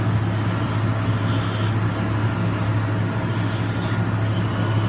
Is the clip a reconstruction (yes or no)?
no